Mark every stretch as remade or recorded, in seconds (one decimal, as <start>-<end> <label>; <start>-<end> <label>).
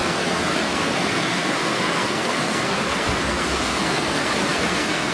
0.0-5.1 remade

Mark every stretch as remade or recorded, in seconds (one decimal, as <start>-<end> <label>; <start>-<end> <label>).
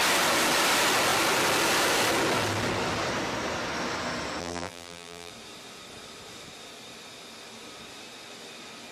0.0-4.4 recorded; 4.4-5.3 remade; 5.3-8.9 recorded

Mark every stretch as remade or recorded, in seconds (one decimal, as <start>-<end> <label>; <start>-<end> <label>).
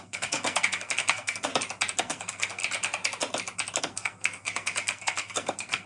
0.0-1.5 remade; 1.5-2.0 recorded; 2.0-2.6 remade; 2.6-3.8 recorded; 3.8-5.9 remade